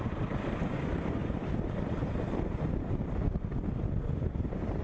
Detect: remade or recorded remade